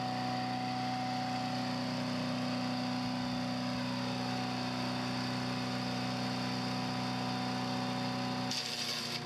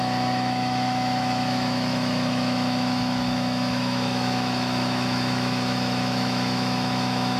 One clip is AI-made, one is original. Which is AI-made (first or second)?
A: second